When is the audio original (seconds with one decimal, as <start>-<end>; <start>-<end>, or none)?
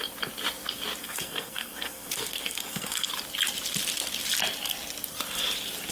0.0-1.0; 3.1-5.9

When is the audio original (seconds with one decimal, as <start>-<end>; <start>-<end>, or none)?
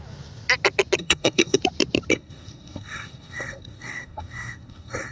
0.0-1.0; 1.6-2.1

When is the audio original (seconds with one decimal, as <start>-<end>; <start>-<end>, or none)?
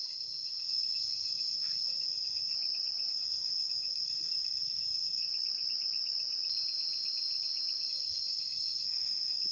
2.5-3.1; 5.2-7.9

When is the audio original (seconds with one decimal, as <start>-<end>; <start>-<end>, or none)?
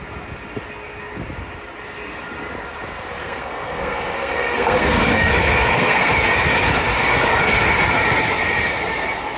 0.0-3.2; 6.1-9.4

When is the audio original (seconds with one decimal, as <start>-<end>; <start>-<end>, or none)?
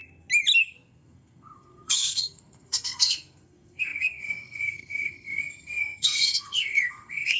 0.0-0.6